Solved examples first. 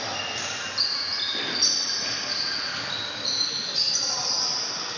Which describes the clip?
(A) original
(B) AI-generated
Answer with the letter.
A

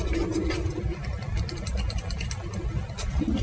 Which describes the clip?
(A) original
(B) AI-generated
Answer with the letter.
A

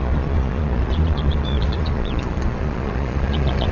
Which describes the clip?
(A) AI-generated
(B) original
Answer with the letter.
A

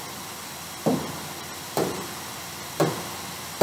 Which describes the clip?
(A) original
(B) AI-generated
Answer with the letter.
A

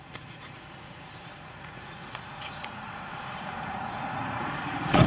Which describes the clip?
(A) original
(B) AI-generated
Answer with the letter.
B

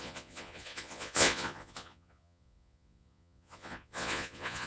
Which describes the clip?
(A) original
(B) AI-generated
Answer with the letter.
B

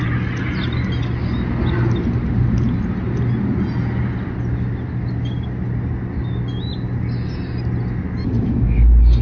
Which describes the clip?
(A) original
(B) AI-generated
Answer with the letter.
A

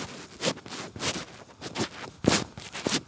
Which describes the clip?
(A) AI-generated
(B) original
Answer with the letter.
B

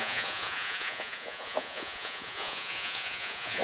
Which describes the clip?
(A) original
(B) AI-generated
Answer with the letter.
B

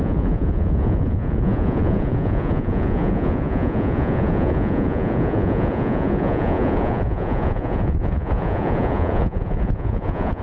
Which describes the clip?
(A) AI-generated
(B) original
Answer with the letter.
A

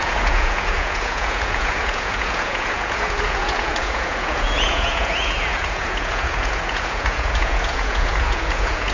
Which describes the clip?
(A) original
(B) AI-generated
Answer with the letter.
B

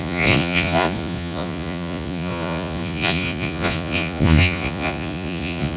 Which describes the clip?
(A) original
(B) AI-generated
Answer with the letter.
B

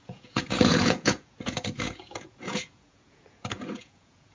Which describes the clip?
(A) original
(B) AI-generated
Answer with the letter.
B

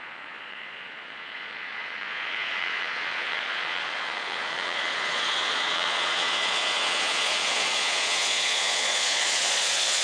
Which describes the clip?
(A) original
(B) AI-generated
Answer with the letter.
B